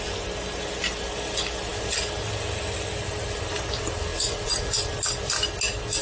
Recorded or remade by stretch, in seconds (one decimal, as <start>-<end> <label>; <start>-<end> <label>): 0.0-6.0 recorded